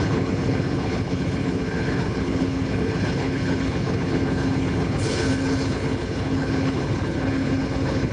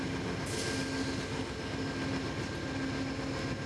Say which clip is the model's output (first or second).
first